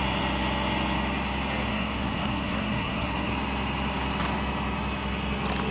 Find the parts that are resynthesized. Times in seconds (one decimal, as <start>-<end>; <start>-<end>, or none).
1.7-3.3